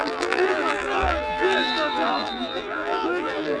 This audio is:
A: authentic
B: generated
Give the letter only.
B